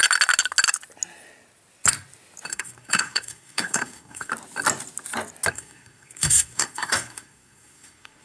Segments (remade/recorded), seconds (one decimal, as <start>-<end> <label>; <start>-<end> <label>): 0.0-2.5 recorded; 2.5-4.3 remade; 4.3-5.5 recorded; 5.5-8.2 remade